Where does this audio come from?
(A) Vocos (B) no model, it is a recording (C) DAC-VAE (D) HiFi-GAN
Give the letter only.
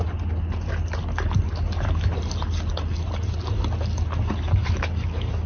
B